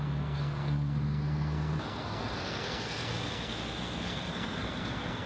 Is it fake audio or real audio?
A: fake